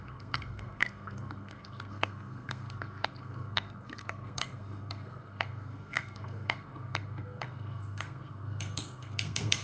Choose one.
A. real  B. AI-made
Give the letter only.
B